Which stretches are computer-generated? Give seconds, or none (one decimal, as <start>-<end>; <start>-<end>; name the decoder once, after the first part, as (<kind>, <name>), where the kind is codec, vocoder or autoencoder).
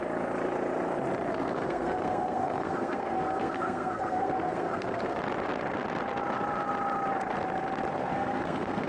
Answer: 1.3-5.2 (codec, SNAC); 7.9-8.9